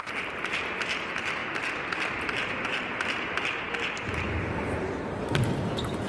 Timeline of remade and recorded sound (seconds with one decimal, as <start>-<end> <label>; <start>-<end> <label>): 0.0-6.1 recorded